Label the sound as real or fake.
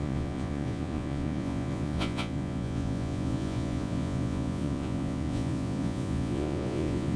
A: fake